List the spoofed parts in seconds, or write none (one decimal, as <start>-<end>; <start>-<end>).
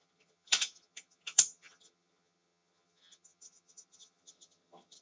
0.0-5.0